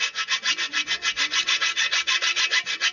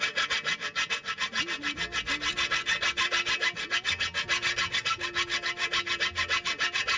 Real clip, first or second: second